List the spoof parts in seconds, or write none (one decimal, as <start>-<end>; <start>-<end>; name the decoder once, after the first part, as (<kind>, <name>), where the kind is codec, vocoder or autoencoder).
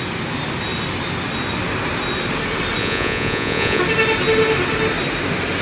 2.8-3.8 (vocoder, Vocos)